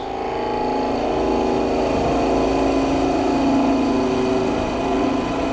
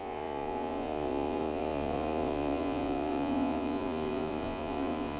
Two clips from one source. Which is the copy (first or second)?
second